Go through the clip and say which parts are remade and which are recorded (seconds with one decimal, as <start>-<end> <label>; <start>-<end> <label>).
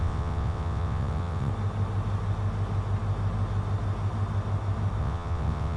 0.0-1.5 remade; 1.5-5.0 recorded; 5.0-5.8 remade